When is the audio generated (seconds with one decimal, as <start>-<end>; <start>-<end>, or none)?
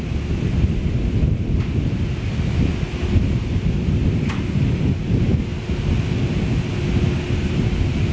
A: none